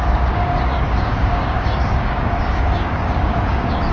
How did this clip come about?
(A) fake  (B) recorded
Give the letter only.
A